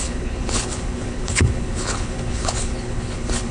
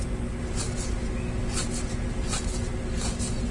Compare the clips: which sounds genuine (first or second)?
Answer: second